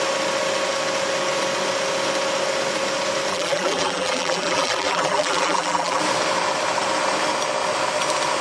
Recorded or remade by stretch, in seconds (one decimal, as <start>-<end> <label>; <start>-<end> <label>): 0.0-3.3 recorded; 3.3-6.0 remade; 6.0-8.4 recorded